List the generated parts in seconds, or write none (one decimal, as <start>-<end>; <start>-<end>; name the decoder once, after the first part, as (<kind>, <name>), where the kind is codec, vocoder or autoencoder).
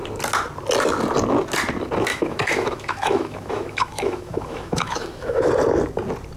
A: 2.1-5.5 (autoencoder, DAC-VAE)